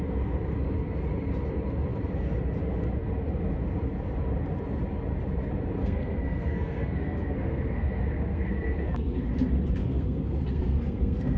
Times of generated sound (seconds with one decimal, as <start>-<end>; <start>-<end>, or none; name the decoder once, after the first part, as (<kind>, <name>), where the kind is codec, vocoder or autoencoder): 5.8-9.3 (codec, SNAC); 9.8-11.4